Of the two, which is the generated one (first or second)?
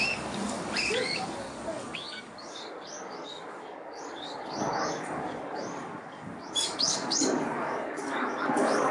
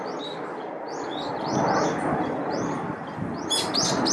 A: first